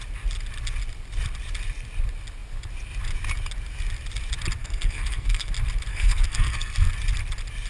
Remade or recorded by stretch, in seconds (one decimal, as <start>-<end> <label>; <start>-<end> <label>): 0.0-4.6 recorded; 4.6-5.5 remade; 5.5-5.9 recorded; 5.9-6.9 remade; 6.9-7.7 recorded